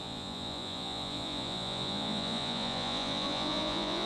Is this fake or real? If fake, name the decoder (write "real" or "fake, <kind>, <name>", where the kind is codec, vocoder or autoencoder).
fake, vocoder, Vocos